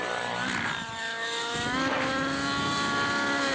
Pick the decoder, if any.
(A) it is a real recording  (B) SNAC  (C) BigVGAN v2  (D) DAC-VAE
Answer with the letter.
A